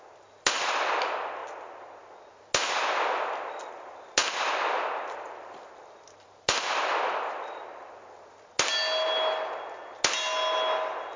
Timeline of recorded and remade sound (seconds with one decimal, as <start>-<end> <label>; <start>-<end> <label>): 0.0-11.2 recorded